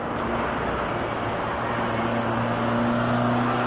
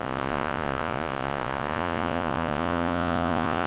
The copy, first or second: second